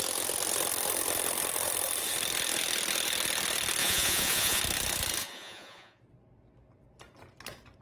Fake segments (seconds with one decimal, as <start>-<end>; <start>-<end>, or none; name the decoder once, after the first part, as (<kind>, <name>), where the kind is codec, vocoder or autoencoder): 3.8-4.6 (vocoder, Vocos); 5.2-6.0